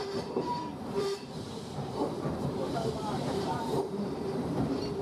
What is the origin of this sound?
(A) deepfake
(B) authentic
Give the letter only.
A